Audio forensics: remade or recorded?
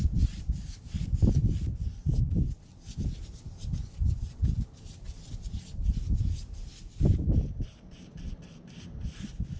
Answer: recorded